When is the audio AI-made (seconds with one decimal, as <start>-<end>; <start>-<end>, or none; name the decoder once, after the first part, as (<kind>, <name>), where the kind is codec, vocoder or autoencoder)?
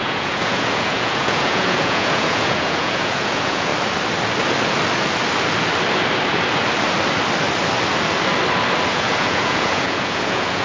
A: 0.0-3.7 (vocoder, Vocos); 8.9-10.6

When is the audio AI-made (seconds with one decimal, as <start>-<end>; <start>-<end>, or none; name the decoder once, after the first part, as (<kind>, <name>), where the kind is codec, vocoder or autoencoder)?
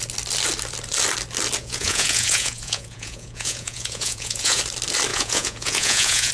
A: 1.6-4.6 (vocoder, Vocos); 5.1-6.3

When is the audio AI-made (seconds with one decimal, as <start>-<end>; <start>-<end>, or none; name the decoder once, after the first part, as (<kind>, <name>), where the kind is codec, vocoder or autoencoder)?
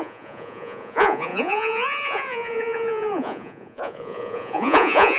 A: 0.0-5.2 (vocoder, Vocos)